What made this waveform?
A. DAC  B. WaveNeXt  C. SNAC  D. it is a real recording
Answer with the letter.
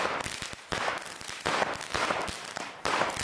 D